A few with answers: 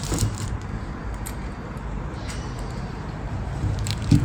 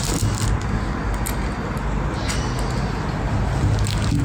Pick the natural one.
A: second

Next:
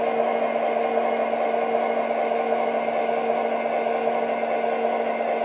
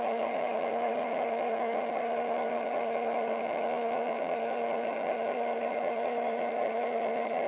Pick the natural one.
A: first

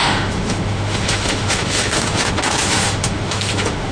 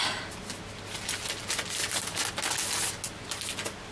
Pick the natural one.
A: second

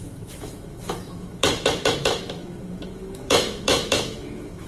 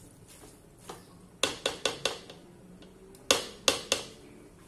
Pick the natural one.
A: second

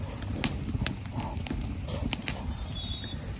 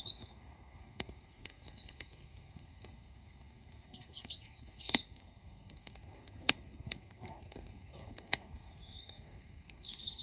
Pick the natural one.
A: first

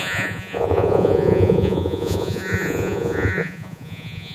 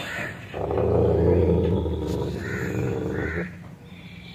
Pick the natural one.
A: second